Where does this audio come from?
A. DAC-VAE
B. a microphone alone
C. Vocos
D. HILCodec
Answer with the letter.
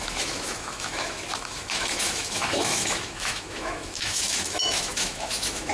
A